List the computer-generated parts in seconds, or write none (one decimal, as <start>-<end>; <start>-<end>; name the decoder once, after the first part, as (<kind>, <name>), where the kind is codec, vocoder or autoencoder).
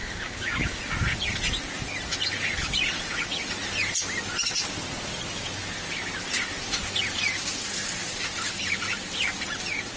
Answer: 0.0-0.8 (codec, DAC)